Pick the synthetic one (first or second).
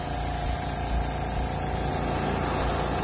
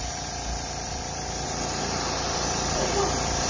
second